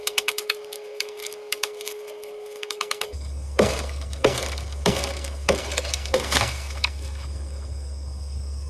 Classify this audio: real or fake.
fake